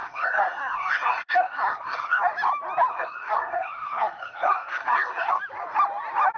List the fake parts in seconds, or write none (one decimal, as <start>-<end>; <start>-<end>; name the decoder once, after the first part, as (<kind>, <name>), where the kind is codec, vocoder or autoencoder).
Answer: 0.0-2.2 (codec, SNAC); 2.9-5.4